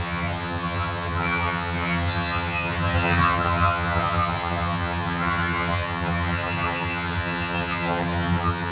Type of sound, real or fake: fake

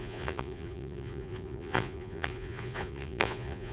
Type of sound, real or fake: fake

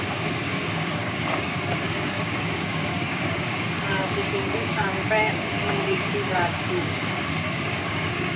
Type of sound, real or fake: fake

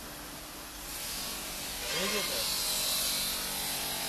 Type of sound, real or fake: real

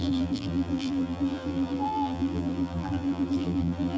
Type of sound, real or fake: fake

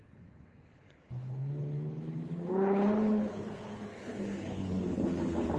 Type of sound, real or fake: fake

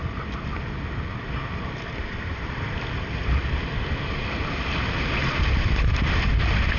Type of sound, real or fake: real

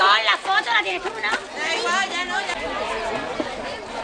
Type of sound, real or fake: real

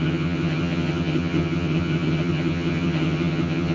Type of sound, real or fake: fake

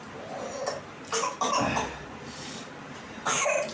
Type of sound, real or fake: real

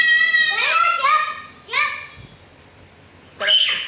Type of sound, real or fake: real